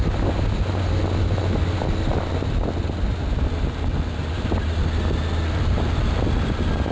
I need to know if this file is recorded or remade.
recorded